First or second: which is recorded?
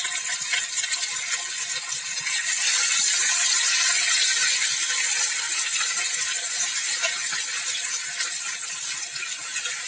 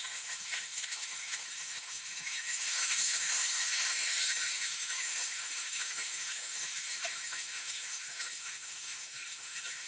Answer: first